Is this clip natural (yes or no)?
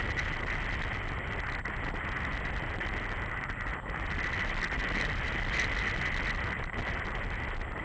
yes